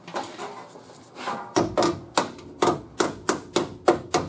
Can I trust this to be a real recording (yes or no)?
yes